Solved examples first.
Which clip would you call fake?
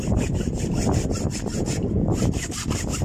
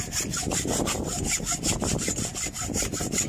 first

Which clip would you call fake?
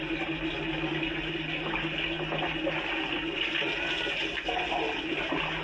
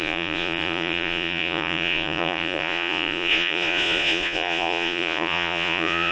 second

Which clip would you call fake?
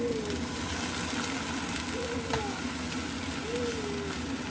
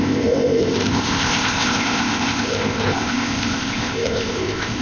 second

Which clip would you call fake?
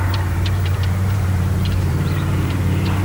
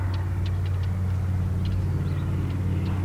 first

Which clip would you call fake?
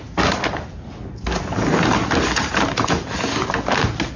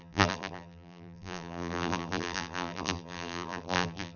second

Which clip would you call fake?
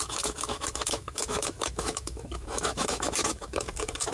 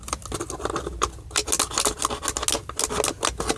first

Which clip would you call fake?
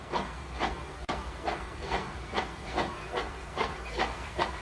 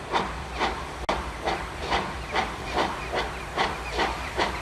first